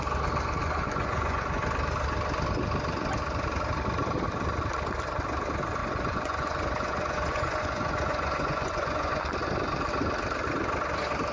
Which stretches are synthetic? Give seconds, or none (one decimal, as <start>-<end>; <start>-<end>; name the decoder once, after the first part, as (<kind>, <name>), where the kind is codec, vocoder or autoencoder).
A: 0.6-1.4 (vocoder, Vocos); 5.8-9.2

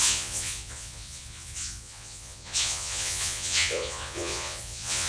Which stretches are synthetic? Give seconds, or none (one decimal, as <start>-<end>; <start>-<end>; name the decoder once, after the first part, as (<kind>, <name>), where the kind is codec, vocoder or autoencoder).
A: 0.0-5.1 (vocoder, Vocos)

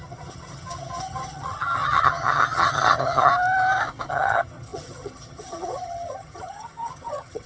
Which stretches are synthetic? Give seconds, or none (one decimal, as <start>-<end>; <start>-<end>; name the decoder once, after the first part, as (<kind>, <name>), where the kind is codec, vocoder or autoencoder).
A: 0.0-3.3 (vocoder, HiFi-GAN); 4.1-7.5

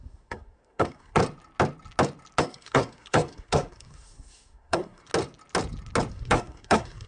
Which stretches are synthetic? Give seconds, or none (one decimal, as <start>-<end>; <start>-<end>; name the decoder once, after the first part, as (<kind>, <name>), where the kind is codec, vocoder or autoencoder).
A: 0.0-1.2 (codec, SNAC); 2.4-5.1; 6.1-7.1

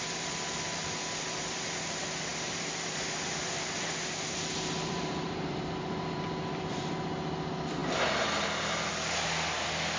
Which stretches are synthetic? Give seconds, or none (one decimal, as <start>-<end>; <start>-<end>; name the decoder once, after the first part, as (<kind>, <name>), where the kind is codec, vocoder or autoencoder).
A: 2.3-6.9 (vocoder, BigVGAN v2)